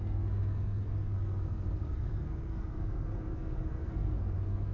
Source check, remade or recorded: remade